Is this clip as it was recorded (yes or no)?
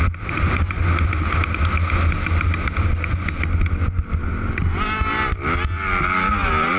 yes